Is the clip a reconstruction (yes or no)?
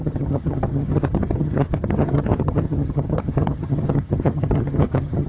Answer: yes